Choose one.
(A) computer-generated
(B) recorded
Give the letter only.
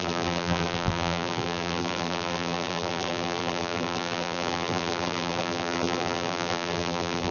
A